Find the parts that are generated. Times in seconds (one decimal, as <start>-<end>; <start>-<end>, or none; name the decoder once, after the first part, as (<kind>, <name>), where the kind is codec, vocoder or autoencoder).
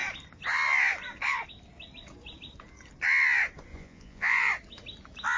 3.7-4.5 (vocoder, Vocos)